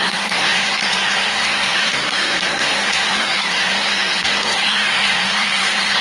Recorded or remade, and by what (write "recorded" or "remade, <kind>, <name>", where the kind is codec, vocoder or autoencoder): remade, codec, SNAC